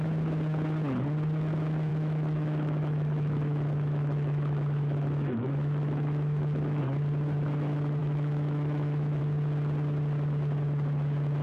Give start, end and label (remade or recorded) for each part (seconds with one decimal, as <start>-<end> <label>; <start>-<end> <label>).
0.0-1.9 recorded; 1.9-6.8 remade; 6.8-8.0 recorded; 8.0-9.2 remade; 9.2-11.4 recorded

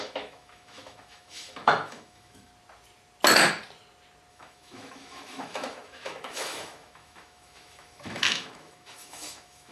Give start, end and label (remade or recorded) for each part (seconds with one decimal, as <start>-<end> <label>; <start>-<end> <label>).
0.0-2.5 remade; 2.5-4.3 recorded; 4.3-9.7 remade

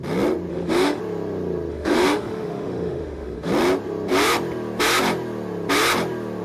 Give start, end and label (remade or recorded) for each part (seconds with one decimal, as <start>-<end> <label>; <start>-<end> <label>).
0.0-0.5 recorded; 0.5-1.0 remade; 1.0-1.7 recorded; 1.7-3.5 remade; 3.5-6.4 recorded

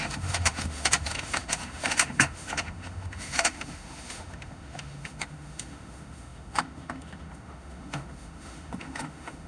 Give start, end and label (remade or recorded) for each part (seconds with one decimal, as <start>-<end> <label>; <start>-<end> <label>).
0.0-9.5 remade

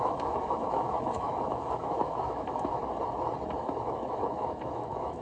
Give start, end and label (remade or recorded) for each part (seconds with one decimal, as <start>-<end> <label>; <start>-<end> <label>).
0.0-2.8 remade; 2.8-3.5 recorded; 3.5-5.2 remade

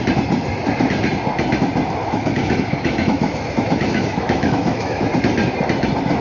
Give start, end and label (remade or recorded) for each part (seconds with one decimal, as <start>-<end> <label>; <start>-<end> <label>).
0.0-2.0 recorded; 2.0-5.0 remade; 5.0-6.2 recorded